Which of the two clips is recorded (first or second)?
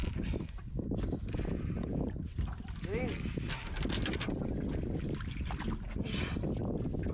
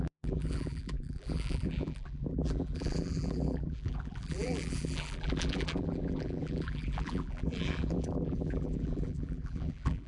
first